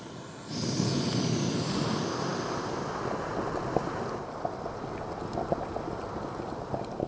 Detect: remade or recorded recorded